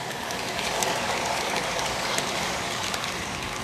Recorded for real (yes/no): no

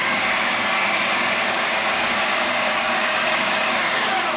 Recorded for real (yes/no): no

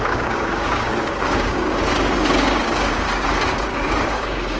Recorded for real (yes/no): no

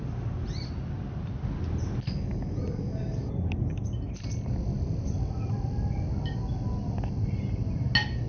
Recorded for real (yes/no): yes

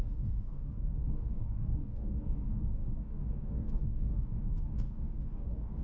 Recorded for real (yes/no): no